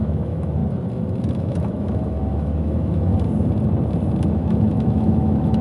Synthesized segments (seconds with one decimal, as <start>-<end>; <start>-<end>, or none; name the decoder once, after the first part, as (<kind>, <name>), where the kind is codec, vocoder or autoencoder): 0.0-0.6 (autoencoder, DAC-VAE); 1.3-3.1; 4.3-5.6